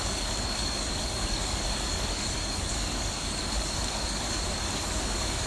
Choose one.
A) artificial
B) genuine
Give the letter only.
A